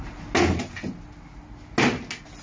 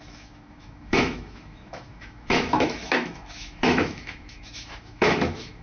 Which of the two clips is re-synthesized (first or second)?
second